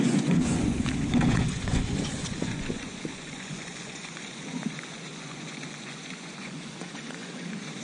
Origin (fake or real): fake